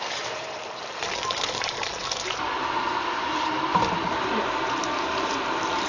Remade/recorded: remade